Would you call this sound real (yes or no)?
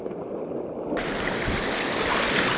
yes